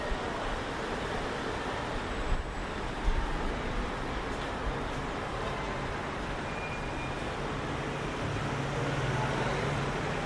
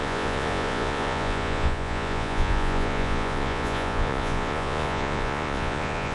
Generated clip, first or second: second